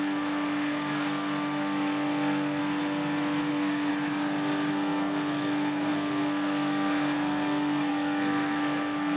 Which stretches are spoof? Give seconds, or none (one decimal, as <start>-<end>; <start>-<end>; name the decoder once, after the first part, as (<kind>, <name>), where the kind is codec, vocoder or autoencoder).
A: 0.0-2.6 (codec, SNAC); 3.5-3.9; 4.7-9.2